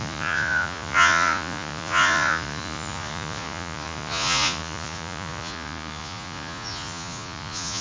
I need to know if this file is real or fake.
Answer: fake